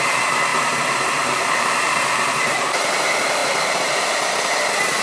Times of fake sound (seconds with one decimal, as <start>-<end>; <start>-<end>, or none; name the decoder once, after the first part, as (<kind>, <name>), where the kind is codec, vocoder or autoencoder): 0.5-3.0 (vocoder, BigVGAN v2); 3.4-4.1